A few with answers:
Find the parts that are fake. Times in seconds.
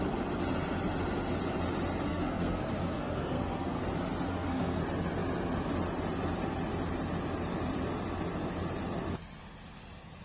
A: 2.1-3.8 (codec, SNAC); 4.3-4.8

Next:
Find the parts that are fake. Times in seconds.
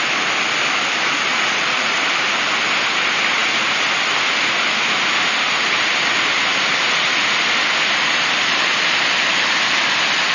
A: 1.3-2.0 (vocoder, Vocos)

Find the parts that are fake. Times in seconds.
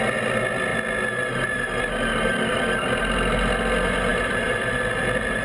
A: 3.0-3.6 (vocoder, BigVGAN v2); 4.1-4.7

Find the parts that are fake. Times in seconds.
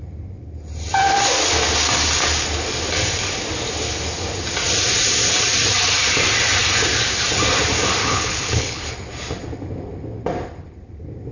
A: 8.0-8.9 (codec, HILCodec)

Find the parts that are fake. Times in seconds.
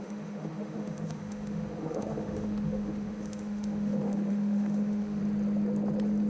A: 0.0-5.2 (autoencoder, DAC-VAE)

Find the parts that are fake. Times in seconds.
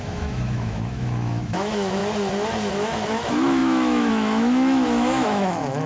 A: 0.0-2.0 (autoencoder, DAC-VAE); 2.7-5.9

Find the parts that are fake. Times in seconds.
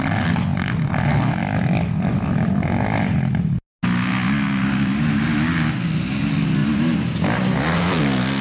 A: none